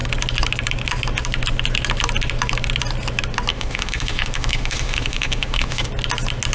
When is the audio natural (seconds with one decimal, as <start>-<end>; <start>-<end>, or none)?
0.0-3.5; 5.9-6.5